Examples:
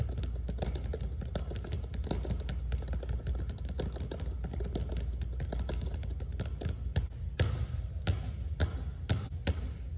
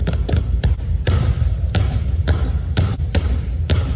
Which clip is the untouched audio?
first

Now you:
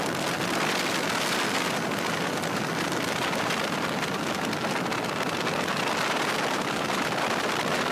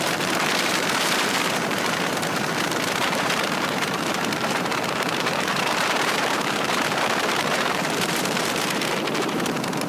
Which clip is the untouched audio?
first